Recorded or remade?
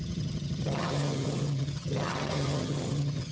remade